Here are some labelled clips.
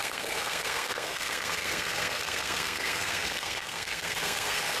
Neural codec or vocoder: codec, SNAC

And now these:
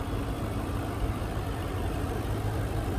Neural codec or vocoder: none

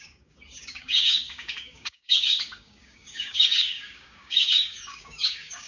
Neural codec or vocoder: codec, DAC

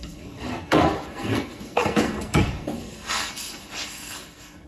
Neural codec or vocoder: codec, SNAC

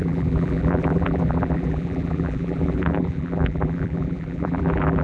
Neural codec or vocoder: vocoder, BigVGAN v2